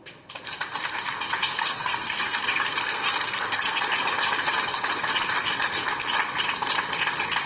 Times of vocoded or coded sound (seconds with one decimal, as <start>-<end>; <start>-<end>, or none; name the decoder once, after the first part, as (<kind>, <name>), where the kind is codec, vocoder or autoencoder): 1.5-3.8 (codec, SNAC)